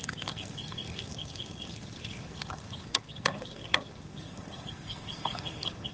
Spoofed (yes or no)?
yes